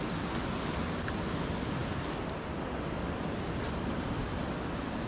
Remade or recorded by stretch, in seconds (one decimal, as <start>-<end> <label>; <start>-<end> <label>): 0.0-5.1 recorded